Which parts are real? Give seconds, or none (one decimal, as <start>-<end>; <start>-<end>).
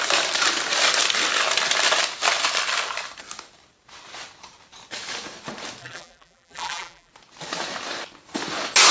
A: 0.0-5.8; 7.1-8.9